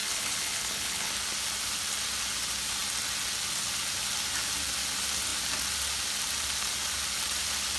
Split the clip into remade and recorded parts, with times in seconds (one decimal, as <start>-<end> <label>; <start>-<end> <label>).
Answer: 0.0-1.1 remade; 1.1-7.8 recorded